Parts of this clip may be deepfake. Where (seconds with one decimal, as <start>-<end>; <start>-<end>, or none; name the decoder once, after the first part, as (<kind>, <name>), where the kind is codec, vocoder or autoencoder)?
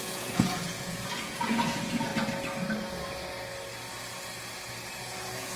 0.0-2.1 (vocoder, Vocos); 5.0-5.6